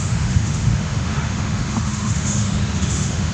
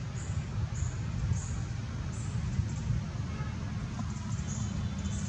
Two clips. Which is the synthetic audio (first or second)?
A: first